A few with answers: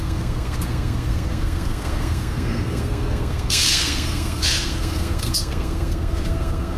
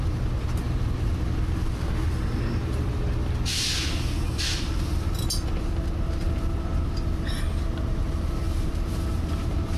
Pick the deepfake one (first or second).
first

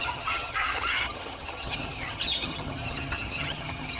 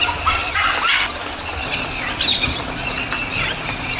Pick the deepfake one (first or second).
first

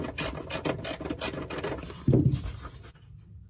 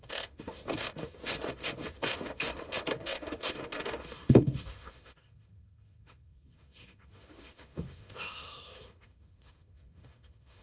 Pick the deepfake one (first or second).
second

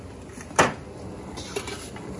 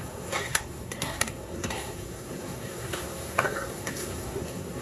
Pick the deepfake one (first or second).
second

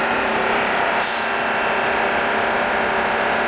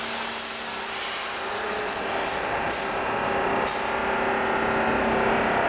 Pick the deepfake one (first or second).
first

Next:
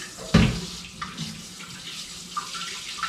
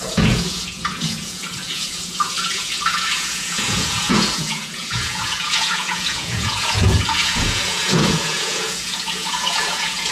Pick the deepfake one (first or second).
second